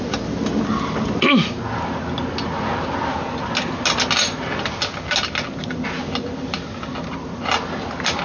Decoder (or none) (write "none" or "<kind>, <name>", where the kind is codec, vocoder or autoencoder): none